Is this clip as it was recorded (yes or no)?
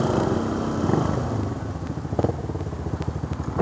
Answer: yes